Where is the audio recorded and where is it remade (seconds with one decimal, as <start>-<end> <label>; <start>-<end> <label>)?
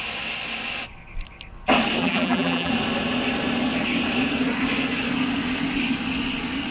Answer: 0.0-2.0 recorded; 2.0-2.7 remade; 2.7-6.7 recorded